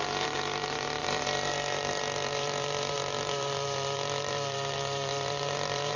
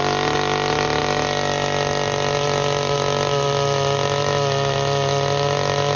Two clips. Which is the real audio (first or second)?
second